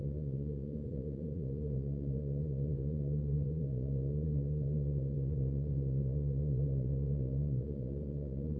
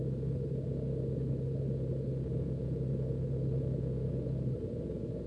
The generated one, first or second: first